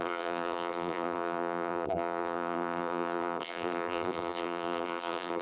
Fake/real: fake